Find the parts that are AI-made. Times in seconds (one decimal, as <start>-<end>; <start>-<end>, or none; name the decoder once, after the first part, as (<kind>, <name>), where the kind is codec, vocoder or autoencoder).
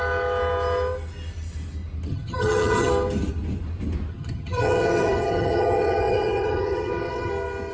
2.1-2.9 (vocoder, HiFi-GAN); 4.1-7.3